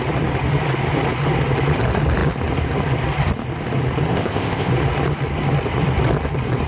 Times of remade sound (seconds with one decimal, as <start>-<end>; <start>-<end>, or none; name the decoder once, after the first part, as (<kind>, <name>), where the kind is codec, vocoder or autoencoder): 4.1-4.7 (codec, ZipCodec)